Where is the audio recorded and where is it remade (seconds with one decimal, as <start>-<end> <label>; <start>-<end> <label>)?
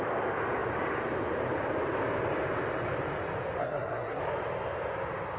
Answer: 0.0-3.6 recorded; 3.6-4.2 remade; 4.2-5.4 recorded